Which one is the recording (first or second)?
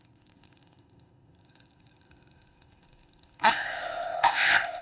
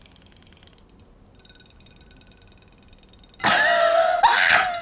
second